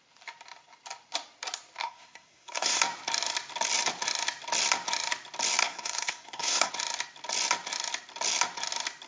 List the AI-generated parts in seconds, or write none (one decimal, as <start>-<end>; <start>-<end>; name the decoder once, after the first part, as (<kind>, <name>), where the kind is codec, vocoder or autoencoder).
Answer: 1.8-2.8 (codec, SNAC); 5.6-6.7